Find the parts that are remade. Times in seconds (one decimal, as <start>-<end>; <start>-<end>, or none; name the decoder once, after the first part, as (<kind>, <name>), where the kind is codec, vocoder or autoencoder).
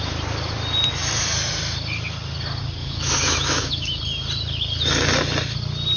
2.8-4.0 (autoencoder, DAC-VAE)